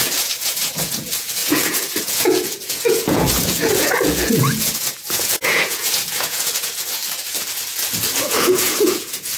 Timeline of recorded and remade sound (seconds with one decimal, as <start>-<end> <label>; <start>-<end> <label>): 0.0-7.0 remade; 7.0-8.1 recorded; 8.1-9.4 remade